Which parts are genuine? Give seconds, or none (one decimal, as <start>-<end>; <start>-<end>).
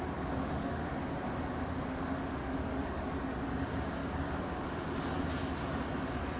0.0-0.4; 0.9-1.9; 3.0-6.4